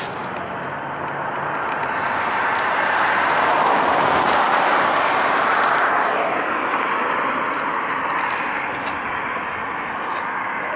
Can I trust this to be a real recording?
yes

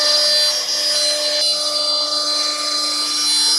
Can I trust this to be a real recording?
yes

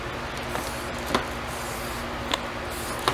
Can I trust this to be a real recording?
yes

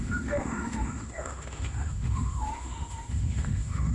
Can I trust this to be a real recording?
no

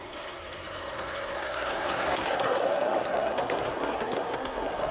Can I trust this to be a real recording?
no